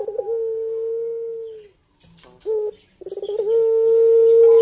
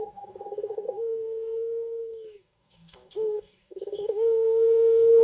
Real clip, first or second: first